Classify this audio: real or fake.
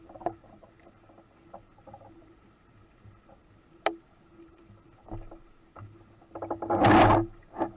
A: real